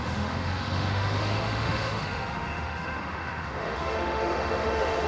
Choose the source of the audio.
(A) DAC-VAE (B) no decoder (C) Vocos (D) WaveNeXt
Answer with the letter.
A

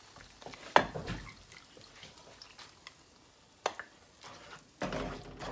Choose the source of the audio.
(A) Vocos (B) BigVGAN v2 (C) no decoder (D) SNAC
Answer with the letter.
C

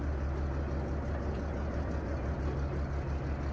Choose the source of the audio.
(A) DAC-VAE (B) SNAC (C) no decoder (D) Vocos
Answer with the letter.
C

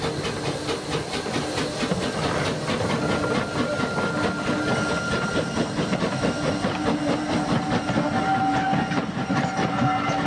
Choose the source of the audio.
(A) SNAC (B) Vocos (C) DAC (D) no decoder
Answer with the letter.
D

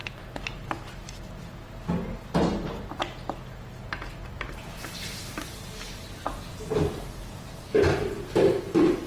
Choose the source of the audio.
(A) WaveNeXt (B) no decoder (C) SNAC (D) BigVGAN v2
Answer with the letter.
B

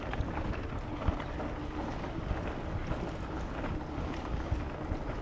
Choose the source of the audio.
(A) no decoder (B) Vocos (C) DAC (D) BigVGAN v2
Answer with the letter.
A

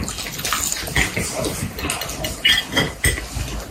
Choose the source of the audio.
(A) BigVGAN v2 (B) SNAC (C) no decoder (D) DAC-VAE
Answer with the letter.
C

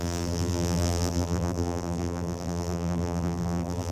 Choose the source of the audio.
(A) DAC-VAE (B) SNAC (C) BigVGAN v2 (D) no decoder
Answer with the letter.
C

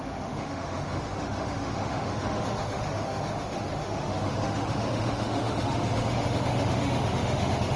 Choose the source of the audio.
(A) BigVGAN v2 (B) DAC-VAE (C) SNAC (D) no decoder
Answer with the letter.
B